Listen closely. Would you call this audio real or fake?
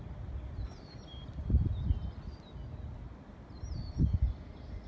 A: real